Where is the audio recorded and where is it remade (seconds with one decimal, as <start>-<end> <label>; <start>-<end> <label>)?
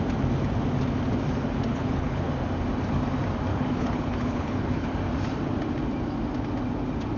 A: 0.0-1.7 recorded; 1.7-2.3 remade; 2.3-3.5 recorded; 3.5-4.9 remade; 4.9-7.2 recorded